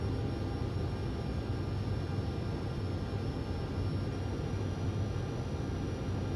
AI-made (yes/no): no